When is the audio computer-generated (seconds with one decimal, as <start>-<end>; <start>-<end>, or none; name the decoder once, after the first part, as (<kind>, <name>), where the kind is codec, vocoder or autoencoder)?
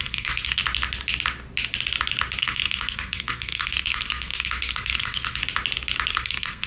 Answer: 0.0-0.6 (codec, SNAC); 2.4-5.4; 6.1-6.7